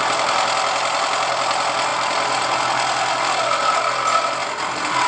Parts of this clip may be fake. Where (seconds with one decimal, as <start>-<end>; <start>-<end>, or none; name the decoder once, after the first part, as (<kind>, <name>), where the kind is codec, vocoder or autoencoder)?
none